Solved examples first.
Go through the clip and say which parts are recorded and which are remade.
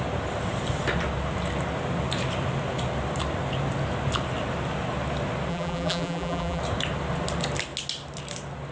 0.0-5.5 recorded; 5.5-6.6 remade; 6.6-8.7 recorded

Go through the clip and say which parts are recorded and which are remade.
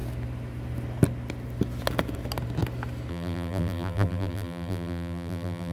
0.0-3.1 recorded; 3.1-5.7 remade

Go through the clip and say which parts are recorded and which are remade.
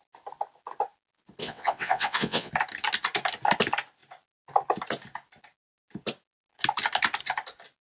0.0-1.4 recorded; 1.4-2.5 remade; 2.5-7.8 recorded